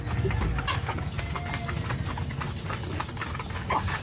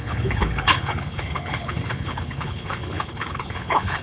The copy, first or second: second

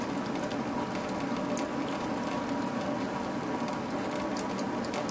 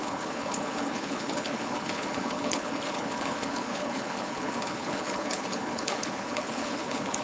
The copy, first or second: second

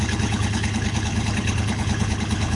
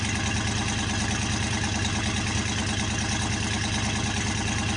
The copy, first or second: first